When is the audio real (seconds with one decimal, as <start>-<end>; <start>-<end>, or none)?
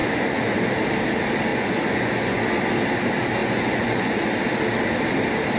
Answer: 0.7-1.5; 2.4-3.4; 4.3-5.6